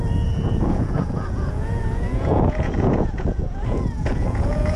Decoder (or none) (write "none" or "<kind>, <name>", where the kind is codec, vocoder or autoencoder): vocoder, Vocos